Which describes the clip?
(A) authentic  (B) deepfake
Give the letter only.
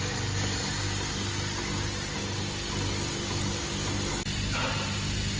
A